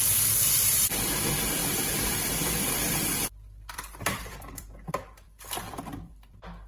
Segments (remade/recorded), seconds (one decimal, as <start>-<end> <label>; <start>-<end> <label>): 0.0-6.7 remade